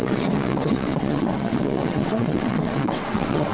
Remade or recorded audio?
remade